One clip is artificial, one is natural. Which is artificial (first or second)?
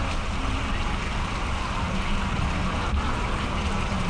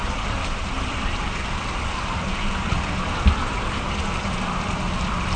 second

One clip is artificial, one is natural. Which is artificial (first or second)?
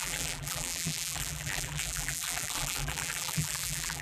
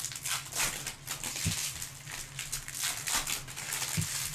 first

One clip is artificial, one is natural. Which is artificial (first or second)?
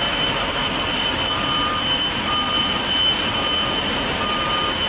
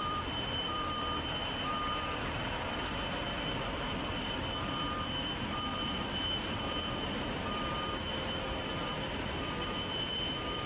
second